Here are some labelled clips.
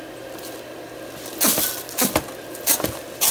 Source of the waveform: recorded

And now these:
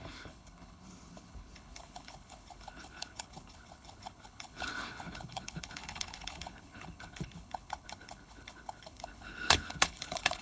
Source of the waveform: remade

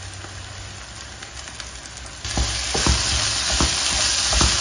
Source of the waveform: recorded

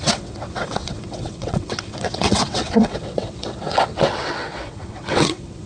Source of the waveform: remade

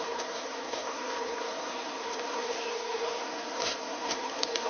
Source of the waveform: remade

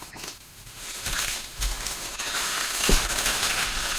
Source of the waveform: remade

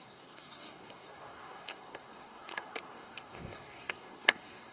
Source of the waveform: remade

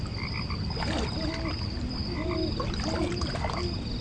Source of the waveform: remade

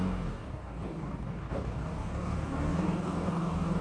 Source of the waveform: remade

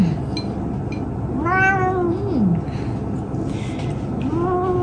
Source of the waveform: recorded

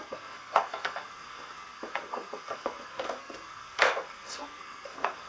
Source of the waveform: remade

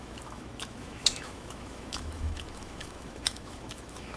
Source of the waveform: remade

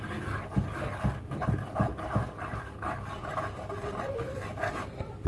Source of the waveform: recorded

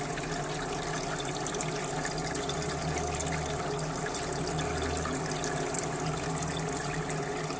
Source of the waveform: recorded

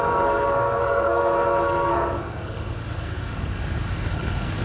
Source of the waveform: remade